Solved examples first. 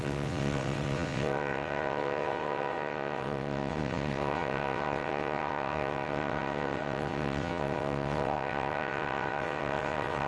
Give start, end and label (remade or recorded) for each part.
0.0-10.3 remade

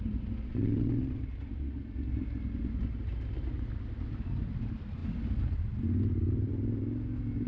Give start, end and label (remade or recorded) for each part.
0.0-0.5 recorded; 0.5-1.2 remade; 1.2-7.5 recorded

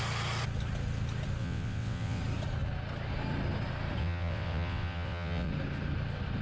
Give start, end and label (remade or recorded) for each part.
0.0-1.4 recorded; 1.4-2.2 remade; 2.2-4.0 recorded; 4.0-5.5 remade; 5.5-6.4 recorded

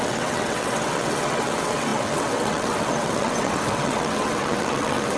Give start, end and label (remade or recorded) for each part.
0.0-5.2 remade

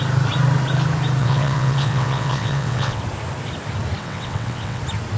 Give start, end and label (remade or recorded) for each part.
0.0-1.2 recorded; 1.2-3.0 remade; 3.0-4.0 recorded; 4.0-4.8 remade; 4.8-5.2 recorded